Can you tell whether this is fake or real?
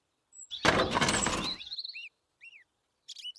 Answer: real